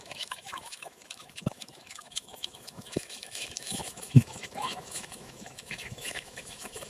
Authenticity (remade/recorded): remade